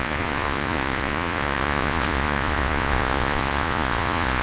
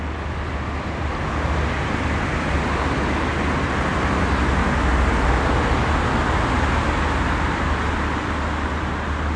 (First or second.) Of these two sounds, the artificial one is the first